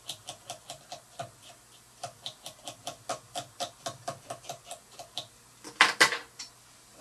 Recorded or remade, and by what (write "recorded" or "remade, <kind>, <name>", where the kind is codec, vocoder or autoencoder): recorded